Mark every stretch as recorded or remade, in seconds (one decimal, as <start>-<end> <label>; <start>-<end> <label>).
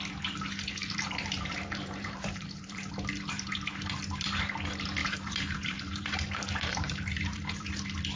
0.0-0.8 recorded; 0.8-2.9 remade; 2.9-5.0 recorded; 5.0-7.7 remade; 7.7-8.2 recorded